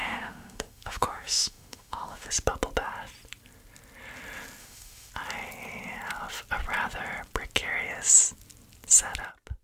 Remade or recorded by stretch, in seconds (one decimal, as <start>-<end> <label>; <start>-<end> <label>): 0.0-2.3 remade; 2.3-4.6 recorded; 4.6-5.1 remade; 5.1-9.6 recorded